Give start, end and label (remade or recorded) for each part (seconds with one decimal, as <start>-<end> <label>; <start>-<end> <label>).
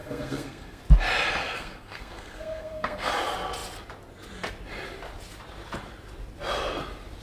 0.0-0.8 remade; 0.8-1.4 recorded; 1.4-3.1 remade; 3.1-7.2 recorded